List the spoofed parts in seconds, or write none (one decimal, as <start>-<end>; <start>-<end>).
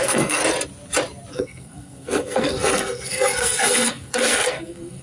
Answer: 0.0-0.4; 1.3-5.0